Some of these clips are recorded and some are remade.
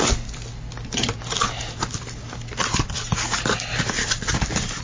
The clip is recorded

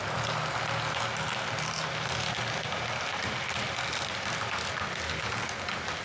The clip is recorded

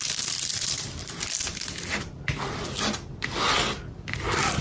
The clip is remade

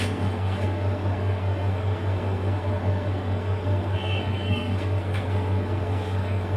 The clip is remade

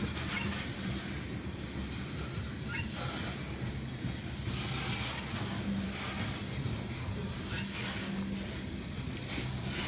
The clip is recorded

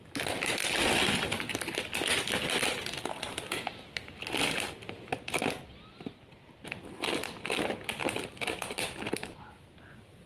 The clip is recorded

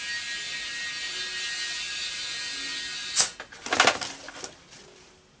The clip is recorded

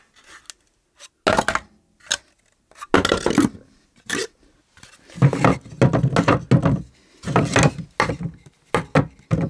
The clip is recorded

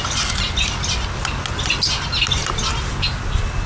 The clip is recorded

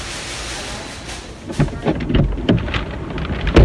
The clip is recorded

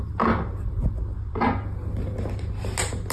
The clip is recorded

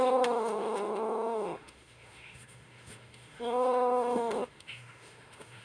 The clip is remade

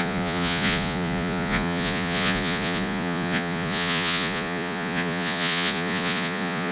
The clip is remade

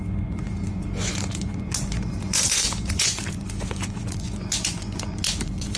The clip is remade